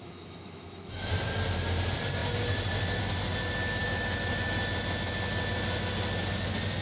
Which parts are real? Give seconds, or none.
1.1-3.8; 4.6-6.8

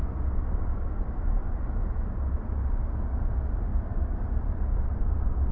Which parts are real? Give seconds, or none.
0.9-1.4; 2.3-3.7; 4.8-5.5